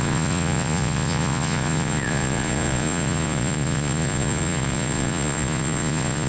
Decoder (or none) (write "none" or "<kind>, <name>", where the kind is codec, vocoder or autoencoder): vocoder, Vocos